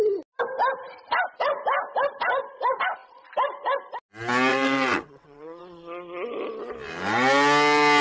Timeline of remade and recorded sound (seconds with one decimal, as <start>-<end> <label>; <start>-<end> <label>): 0.0-4.5 recorded; 4.5-5.6 remade; 5.6-8.0 recorded